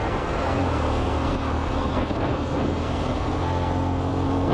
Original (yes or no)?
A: no